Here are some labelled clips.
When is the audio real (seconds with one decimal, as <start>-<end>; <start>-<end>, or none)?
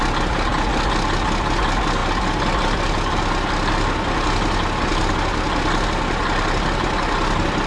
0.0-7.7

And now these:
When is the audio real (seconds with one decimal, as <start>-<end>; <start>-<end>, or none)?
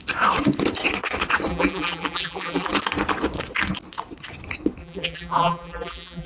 0.0-1.5; 2.7-4.8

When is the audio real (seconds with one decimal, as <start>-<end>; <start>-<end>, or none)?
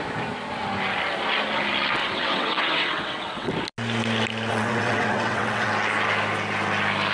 0.0-2.0; 3.5-4.5; 5.7-7.1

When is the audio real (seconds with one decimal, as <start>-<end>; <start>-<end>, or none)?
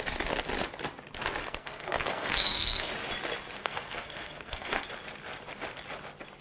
0.0-1.4; 2.9-3.6; 4.9-6.4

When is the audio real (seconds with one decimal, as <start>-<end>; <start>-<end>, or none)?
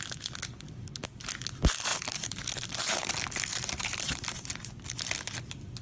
0.0-1.9; 3.1-3.5; 4.7-5.8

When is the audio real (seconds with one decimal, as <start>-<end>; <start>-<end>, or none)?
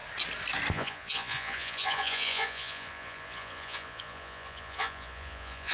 0.0-0.7